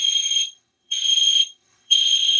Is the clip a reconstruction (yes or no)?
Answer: yes